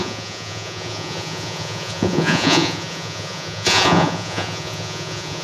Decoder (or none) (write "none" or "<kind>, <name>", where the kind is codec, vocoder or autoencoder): vocoder, Vocos